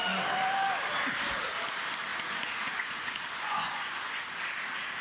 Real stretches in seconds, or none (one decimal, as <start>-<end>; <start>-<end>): 0.0-2.1; 4.2-5.0